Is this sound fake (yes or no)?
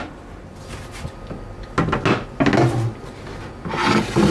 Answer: no